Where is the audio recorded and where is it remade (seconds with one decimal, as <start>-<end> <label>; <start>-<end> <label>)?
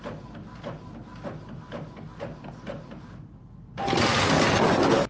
0.0-5.1 recorded